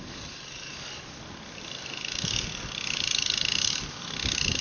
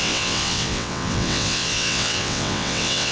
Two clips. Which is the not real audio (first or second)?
second